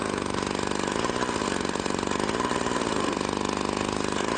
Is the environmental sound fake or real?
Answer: real